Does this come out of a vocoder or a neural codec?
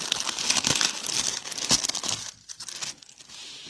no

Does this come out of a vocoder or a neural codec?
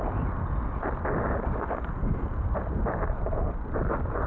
no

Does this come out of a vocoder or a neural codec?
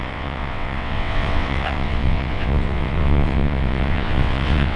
yes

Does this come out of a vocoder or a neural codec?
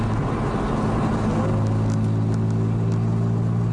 no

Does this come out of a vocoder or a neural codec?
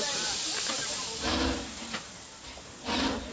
no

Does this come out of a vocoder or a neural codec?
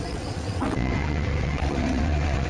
yes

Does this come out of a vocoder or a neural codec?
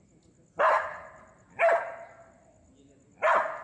no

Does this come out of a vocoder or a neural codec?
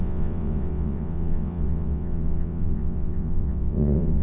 yes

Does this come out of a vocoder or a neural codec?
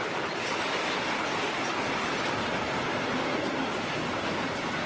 no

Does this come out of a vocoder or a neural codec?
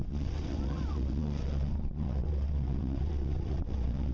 yes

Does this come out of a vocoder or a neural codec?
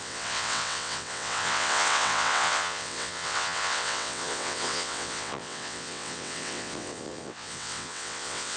yes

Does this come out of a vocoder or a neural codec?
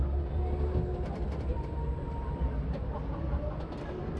no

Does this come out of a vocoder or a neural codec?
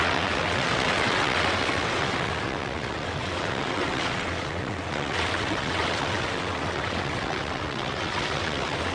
yes